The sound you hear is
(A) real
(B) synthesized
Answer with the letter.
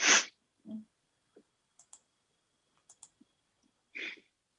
A